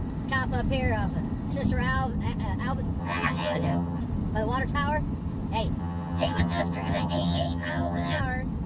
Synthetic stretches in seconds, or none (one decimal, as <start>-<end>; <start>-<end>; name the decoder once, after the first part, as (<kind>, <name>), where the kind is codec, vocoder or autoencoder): 3.0-4.0 (vocoder, HiFi-GAN); 5.8-8.2